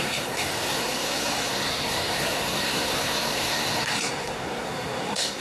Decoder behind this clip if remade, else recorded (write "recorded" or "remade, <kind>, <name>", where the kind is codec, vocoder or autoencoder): remade, codec, SNAC